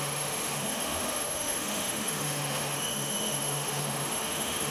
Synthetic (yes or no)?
yes